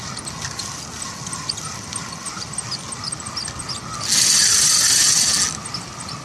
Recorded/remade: recorded